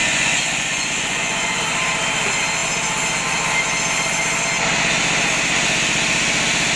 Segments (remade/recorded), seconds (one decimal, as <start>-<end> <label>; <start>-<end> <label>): 0.0-1.6 remade; 1.6-6.8 recorded